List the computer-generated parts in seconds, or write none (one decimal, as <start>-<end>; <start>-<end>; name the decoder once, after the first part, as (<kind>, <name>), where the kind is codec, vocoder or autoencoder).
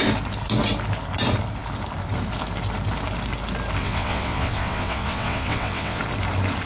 3.8-6.0 (vocoder, WaveNeXt)